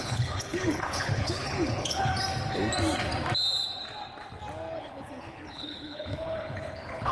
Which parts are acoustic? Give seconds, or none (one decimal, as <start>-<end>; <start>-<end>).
2.1-4.8